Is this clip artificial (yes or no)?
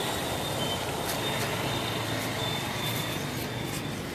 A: no